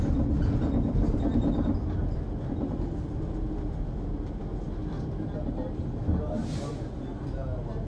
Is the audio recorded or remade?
recorded